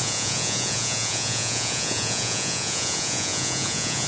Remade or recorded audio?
remade